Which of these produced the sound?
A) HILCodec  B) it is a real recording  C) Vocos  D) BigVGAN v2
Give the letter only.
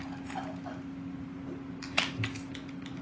B